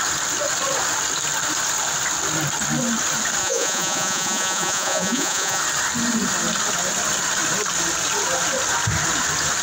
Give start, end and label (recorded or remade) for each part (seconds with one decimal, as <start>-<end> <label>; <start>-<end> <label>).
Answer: 0.0-3.4 recorded; 3.4-5.6 remade; 5.6-9.6 recorded